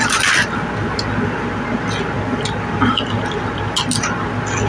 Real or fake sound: real